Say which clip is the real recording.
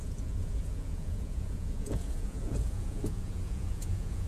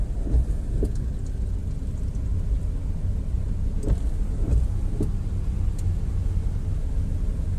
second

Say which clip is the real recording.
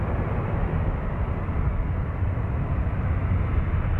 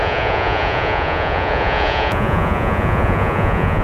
first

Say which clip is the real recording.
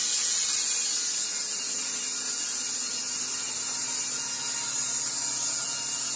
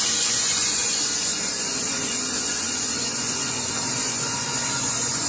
first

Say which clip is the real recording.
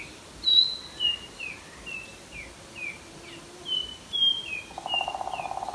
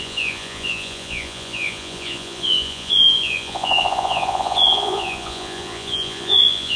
first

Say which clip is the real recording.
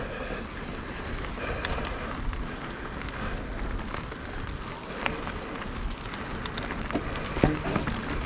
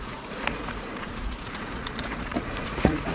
first